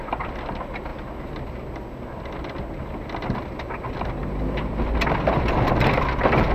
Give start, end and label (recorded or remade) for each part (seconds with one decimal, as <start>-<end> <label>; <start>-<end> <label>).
0.0-6.5 recorded